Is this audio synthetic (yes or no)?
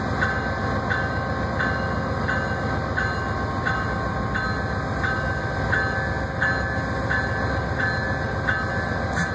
no